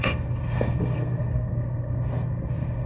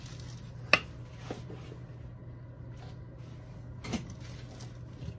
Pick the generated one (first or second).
first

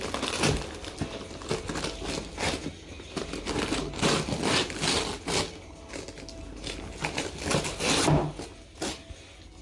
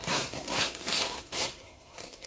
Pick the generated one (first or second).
second